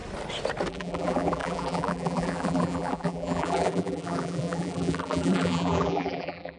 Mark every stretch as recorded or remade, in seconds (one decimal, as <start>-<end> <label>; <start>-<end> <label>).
0.0-0.7 recorded; 0.7-6.6 remade

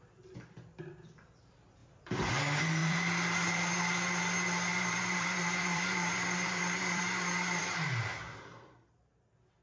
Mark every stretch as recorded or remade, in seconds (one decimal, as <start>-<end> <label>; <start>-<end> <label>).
0.0-1.8 recorded; 1.8-2.3 remade; 2.3-2.8 recorded; 2.8-3.7 remade; 3.7-4.7 recorded; 4.7-7.6 remade; 7.6-9.6 recorded

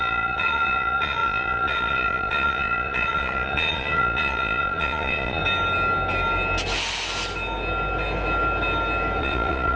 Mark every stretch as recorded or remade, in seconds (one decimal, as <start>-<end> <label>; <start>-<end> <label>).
0.0-5.4 remade; 5.4-9.2 recorded; 9.2-9.8 remade

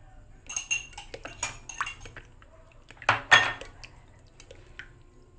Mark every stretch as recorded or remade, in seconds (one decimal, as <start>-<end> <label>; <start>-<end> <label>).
0.0-5.4 recorded

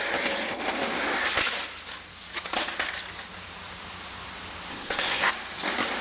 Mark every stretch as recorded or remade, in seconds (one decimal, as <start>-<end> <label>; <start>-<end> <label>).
0.0-4.7 recorded; 4.7-5.3 remade; 5.3-6.0 recorded

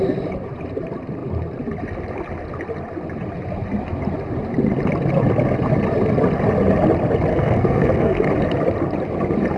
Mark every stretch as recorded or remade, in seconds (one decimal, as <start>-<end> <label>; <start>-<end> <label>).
0.0-7.3 recorded; 7.3-8.3 remade; 8.3-9.6 recorded

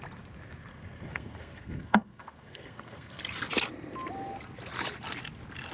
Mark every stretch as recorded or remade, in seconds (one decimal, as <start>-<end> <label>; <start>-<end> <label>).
0.0-0.7 recorded; 0.7-3.2 remade; 3.2-5.7 recorded

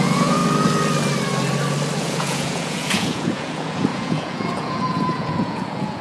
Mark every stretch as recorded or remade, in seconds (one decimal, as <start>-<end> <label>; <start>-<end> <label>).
0.0-0.4 remade; 0.4-2.0 recorded; 2.0-6.0 remade